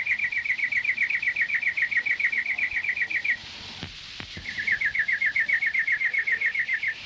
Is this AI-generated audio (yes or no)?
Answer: yes